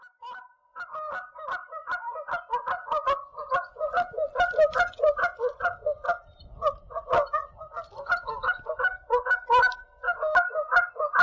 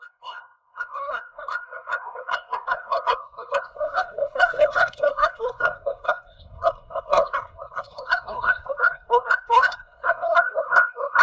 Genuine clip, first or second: first